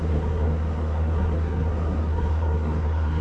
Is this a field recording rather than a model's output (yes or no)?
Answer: no